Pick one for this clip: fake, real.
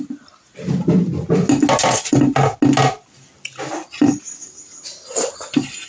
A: real